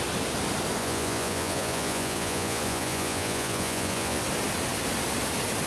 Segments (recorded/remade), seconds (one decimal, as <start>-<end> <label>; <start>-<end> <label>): 0.0-0.8 recorded; 0.8-4.2 remade; 4.2-5.7 recorded